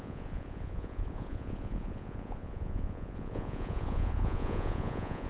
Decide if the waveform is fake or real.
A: fake